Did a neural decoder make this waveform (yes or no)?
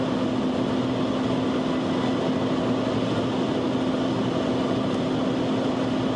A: no